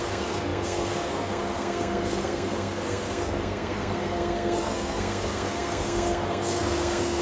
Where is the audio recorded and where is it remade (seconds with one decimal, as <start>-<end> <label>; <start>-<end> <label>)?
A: 0.0-7.2 remade